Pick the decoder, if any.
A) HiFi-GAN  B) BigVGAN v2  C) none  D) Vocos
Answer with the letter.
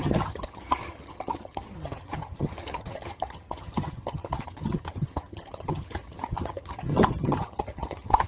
A